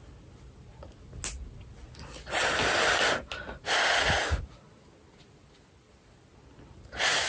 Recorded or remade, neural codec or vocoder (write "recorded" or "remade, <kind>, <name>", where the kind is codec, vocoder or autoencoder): recorded